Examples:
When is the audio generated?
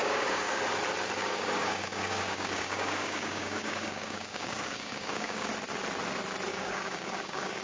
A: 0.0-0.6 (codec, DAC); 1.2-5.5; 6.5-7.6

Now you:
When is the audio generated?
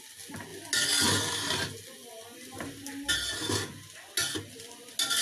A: none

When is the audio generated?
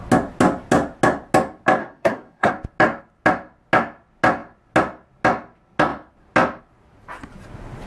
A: 1.8-2.5 (codec, SNAC)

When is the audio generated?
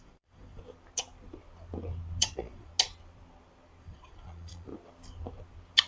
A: 0.0-0.6 (vocoder, Vocos); 2.2-2.7; 3.8-4.7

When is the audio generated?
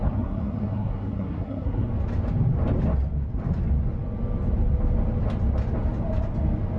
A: 0.0-1.9 (codec, SNAC)